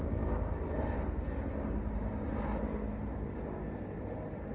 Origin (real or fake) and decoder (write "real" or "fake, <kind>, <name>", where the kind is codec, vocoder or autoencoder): real